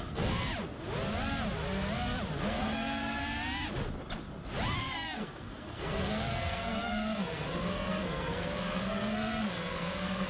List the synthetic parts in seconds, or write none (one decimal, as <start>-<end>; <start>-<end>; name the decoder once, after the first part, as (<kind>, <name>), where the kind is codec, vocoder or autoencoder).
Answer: 0.0-0.5 (codec, SNAC); 2.4-3.2; 4.8-10.3